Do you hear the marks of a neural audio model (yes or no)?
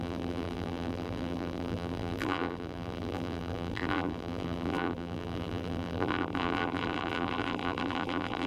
yes